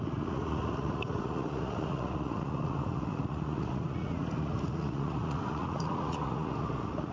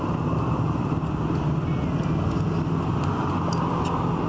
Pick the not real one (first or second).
first